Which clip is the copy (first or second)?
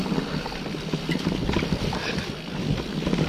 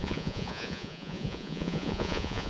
second